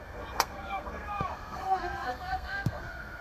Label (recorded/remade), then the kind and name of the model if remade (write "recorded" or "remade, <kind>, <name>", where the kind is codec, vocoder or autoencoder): remade, codec, SNAC